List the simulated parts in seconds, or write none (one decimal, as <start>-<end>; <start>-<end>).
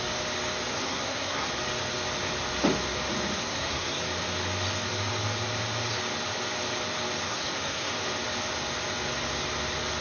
0.7-1.5; 3.4-4.0; 7.3-7.9